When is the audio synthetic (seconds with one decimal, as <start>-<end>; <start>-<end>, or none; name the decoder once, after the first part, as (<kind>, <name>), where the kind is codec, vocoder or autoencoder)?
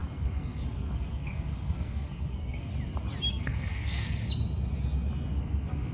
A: 0.0-2.7 (codec, SNAC); 3.3-4.2; 5.4-5.9